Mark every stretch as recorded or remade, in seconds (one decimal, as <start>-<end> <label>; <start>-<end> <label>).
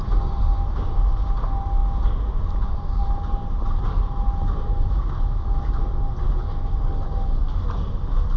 0.0-8.4 recorded